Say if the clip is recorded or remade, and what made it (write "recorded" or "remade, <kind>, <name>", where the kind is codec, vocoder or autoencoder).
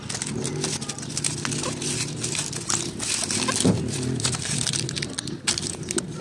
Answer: recorded